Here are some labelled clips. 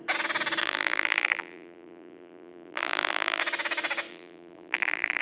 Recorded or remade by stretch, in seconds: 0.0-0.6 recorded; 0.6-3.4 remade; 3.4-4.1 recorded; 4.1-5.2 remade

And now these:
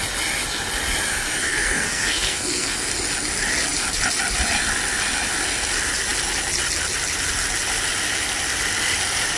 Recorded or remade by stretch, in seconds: 0.0-1.4 recorded; 1.4-2.9 remade; 2.9-9.4 recorded

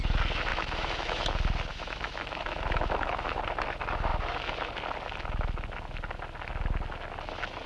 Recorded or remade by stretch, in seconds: 0.0-0.5 recorded; 0.5-1.2 remade; 1.2-1.7 recorded; 1.7-3.4 remade; 3.4-7.7 recorded

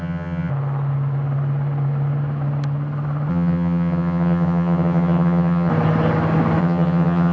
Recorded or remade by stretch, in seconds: 0.0-0.5 remade; 0.5-3.3 recorded; 3.3-5.7 remade; 5.7-6.6 recorded; 6.6-7.3 remade

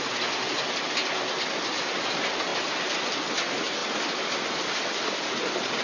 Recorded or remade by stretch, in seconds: 0.0-5.8 recorded

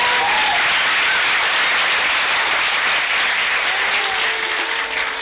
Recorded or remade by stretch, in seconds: 0.0-5.2 recorded

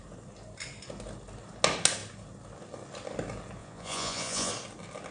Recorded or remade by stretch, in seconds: 0.0-3.6 recorded; 3.6-4.5 remade; 4.5-5.1 recorded